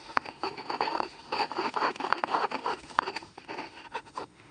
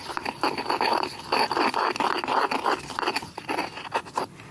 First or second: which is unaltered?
second